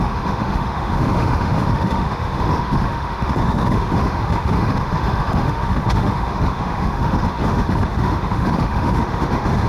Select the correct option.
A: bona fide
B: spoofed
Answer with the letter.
B